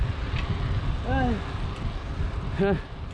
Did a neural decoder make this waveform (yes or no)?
no